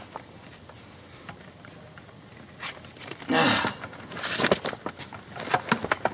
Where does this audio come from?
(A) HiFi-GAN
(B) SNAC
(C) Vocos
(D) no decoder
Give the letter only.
D